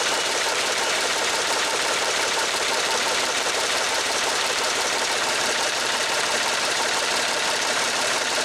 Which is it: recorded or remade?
remade